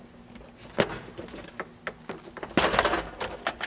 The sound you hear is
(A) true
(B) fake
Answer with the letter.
A